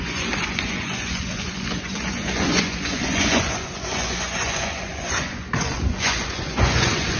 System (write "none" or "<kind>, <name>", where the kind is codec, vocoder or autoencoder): vocoder, Vocos